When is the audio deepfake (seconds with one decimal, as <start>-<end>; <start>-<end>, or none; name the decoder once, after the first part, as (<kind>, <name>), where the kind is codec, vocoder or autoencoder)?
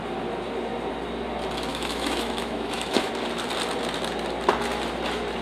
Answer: 1.7-3.1 (autoencoder, DAC-VAE)